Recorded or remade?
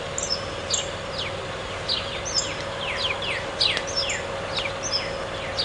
recorded